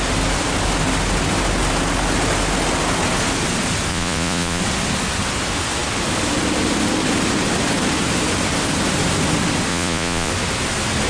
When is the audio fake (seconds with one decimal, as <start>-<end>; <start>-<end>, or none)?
3.9-4.6; 9.7-10.3